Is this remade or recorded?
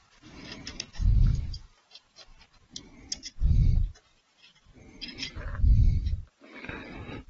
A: recorded